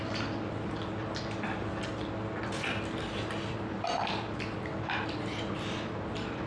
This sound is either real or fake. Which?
real